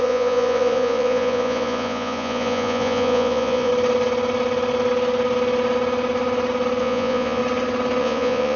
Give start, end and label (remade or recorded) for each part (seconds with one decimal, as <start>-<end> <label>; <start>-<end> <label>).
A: 0.0-3.7 remade; 3.7-6.8 recorded; 6.8-7.4 remade; 7.4-8.0 recorded; 8.0-8.6 remade